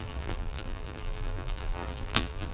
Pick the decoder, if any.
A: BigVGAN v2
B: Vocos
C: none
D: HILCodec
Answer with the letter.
A